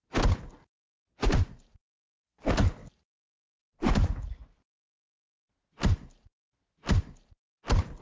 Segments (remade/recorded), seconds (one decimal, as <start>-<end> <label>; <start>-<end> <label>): 0.0-8.0 recorded